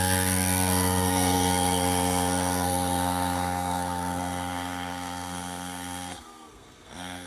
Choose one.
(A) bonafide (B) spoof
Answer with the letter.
B